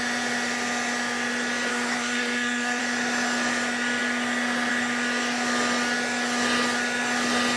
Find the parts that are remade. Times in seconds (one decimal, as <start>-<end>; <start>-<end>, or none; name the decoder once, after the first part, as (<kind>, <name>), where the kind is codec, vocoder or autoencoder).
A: 1.7-2.8 (codec, SNAC)